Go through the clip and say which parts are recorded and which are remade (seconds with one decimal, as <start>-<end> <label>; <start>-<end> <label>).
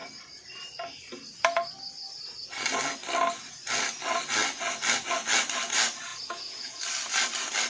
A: 0.0-6.1 recorded; 6.1-6.8 remade; 6.8-7.7 recorded